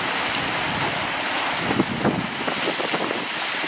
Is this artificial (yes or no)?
no